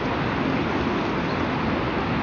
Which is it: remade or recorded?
recorded